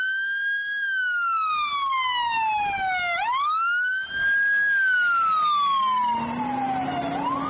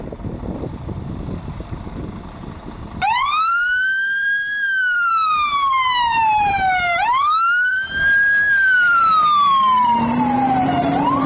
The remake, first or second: second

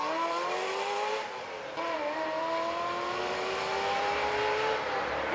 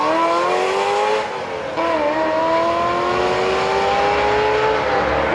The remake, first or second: first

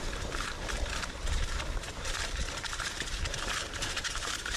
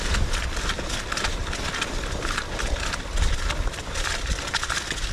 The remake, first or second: first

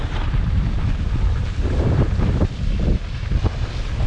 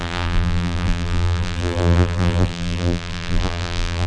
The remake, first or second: second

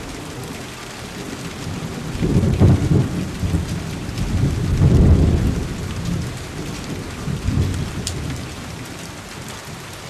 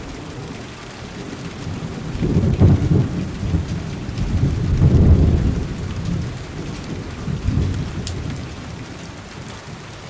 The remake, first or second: second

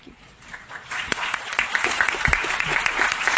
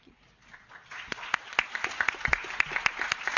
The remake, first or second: first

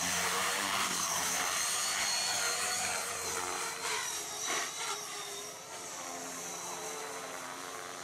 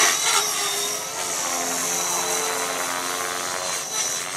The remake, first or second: first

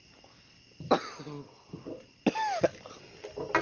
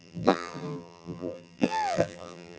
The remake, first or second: second